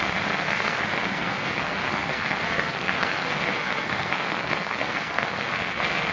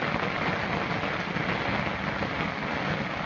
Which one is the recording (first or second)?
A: second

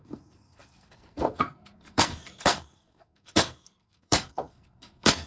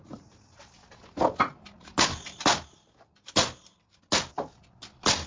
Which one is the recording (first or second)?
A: second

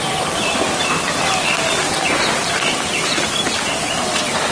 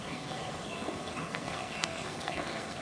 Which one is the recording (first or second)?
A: first